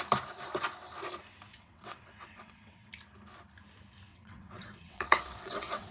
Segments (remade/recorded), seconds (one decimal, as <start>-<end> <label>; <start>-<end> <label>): 0.0-1.5 recorded; 1.5-2.9 remade; 2.9-4.1 recorded; 4.1-5.9 remade